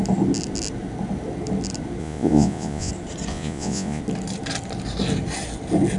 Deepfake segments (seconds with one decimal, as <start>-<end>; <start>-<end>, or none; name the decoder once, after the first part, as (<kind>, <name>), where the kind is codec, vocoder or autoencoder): 2.0-2.9 (vocoder, Vocos); 3.3-4.0